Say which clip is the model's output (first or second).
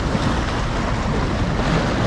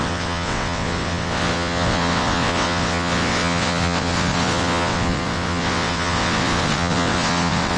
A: second